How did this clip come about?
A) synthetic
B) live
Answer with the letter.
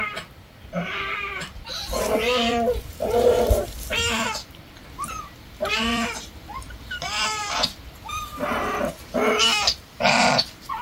A